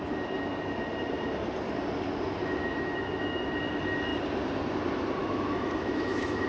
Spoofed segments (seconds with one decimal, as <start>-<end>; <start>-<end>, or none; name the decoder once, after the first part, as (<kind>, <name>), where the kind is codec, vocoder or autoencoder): 2.6-3.5 (autoencoder, DAC-VAE); 5.2-6.5